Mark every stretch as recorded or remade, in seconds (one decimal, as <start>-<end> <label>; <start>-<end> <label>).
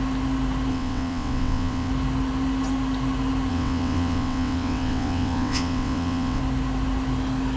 0.0-0.7 recorded; 0.7-1.9 remade; 1.9-3.5 recorded; 3.5-6.4 remade; 6.4-7.6 recorded